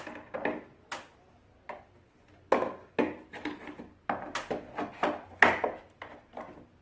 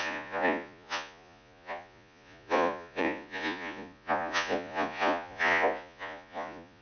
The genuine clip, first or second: first